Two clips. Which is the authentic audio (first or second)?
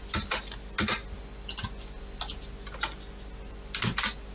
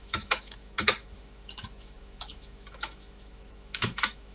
first